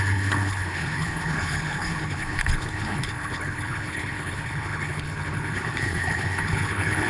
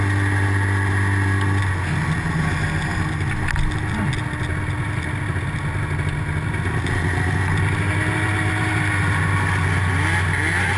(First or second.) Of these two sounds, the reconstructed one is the first